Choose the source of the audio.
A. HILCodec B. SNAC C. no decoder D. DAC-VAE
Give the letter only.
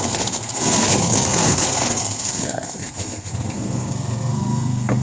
B